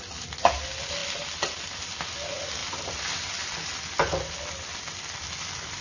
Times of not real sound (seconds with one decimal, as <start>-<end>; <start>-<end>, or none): none